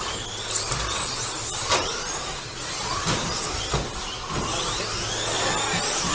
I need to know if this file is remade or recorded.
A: recorded